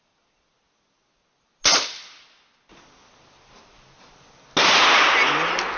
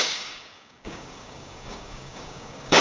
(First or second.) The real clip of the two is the first